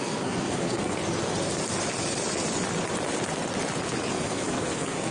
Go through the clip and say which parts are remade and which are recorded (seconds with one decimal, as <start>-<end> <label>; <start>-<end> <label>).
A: 0.0-1.0 remade; 1.0-4.1 recorded; 4.1-5.1 remade